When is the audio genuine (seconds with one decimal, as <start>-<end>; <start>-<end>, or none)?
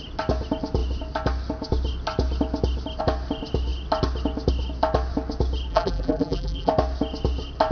0.0-5.7; 6.7-7.7